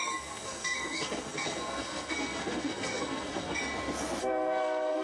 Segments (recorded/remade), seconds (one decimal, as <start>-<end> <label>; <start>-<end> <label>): 0.0-3.6 remade; 3.6-4.2 recorded; 4.2-5.0 remade